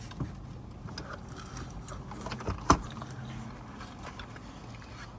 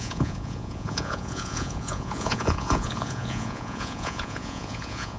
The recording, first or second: first